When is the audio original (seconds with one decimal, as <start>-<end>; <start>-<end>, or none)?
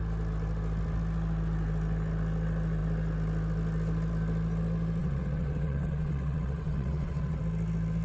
0.0-5.0; 7.4-8.0